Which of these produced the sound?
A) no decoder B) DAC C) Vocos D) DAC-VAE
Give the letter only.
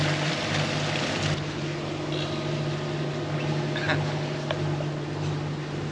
A